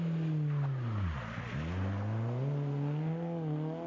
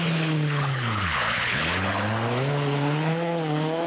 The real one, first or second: first